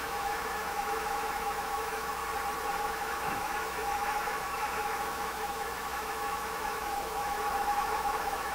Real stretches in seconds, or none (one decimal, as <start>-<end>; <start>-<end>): 2.2-2.8